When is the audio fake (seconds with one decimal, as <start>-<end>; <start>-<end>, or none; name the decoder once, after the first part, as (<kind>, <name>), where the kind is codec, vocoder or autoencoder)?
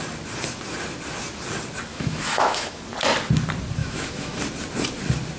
1.9-2.8 (autoencoder, DAC-VAE); 3.8-4.4